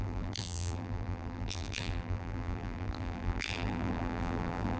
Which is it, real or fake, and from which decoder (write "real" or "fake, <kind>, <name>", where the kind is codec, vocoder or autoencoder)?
fake, vocoder, BigVGAN v2